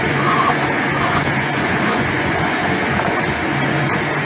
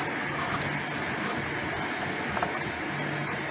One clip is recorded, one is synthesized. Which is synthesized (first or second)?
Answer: first